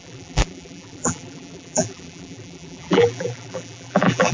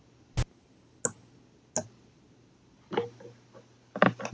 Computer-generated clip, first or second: first